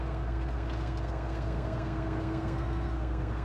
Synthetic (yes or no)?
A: yes